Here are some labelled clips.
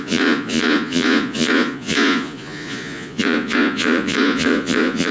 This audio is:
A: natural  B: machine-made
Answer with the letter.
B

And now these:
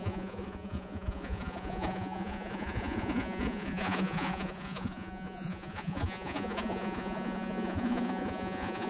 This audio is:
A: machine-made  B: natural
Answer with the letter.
A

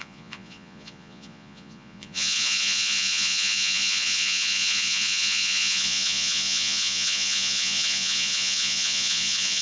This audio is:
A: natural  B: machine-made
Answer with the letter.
B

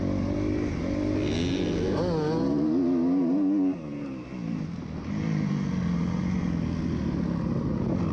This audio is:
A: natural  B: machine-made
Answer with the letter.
A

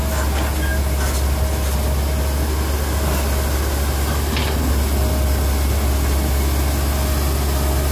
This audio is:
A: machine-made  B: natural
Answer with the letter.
B